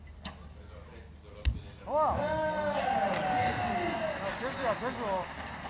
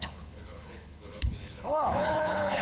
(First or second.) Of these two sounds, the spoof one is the second